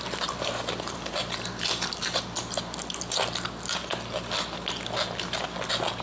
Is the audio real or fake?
real